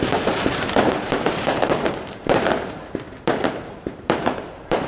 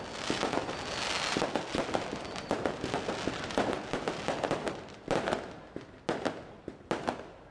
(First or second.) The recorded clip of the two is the second